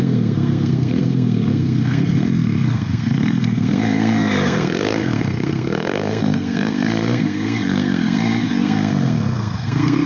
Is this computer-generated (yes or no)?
yes